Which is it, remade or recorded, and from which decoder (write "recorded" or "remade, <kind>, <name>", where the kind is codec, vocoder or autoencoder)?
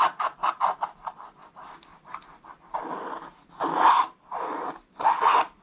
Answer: remade, vocoder, BigVGAN v2